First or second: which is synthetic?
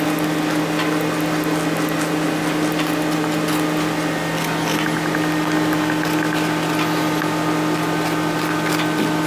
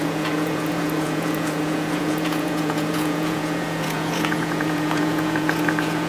second